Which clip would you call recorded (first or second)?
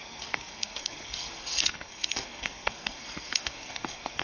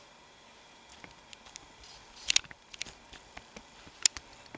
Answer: second